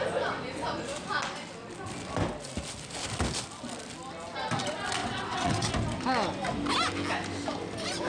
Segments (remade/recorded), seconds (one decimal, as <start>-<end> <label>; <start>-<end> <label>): 0.0-5.0 recorded; 5.0-5.7 remade; 5.7-8.1 recorded